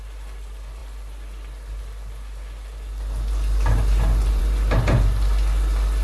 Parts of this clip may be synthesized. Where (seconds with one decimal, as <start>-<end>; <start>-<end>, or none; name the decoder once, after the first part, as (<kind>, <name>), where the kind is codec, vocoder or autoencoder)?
none